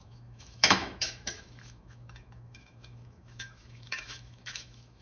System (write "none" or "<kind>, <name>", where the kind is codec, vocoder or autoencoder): autoencoder, DAC-VAE